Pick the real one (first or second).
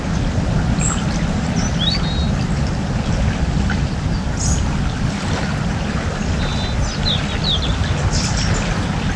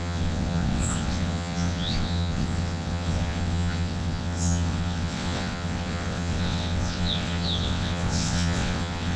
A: first